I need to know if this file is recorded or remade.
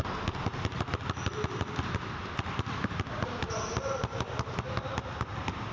recorded